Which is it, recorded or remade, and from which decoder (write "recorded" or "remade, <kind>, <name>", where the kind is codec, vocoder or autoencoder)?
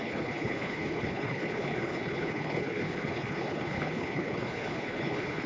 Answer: remade, codec, HILCodec